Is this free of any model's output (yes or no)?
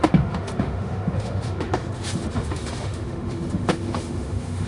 no